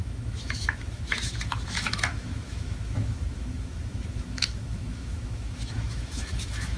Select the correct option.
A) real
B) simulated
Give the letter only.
B